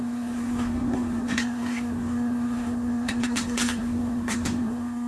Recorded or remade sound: remade